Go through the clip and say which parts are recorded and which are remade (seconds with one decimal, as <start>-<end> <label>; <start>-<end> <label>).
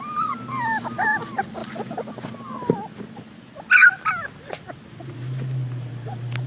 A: 0.0-6.5 recorded